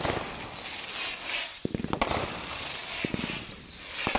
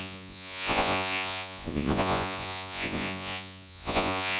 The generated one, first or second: second